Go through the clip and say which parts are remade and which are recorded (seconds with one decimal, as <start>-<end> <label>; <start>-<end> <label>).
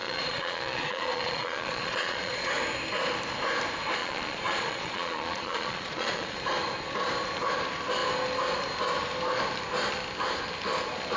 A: 0.0-2.5 remade; 2.5-4.0 recorded; 4.0-6.4 remade; 6.4-11.2 recorded